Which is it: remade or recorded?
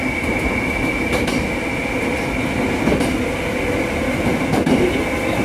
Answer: recorded